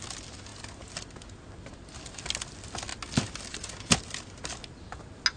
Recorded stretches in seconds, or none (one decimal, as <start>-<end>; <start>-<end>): 0.0-5.4